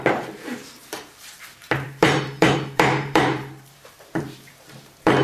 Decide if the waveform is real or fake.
fake